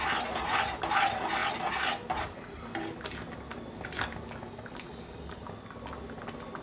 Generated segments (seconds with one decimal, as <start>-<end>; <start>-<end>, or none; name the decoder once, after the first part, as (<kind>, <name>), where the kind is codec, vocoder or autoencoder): none